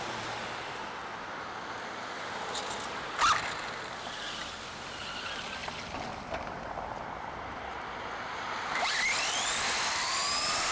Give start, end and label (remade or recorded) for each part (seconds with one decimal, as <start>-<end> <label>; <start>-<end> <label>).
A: 0.0-1.0 remade; 1.0-4.4 recorded; 4.4-10.7 remade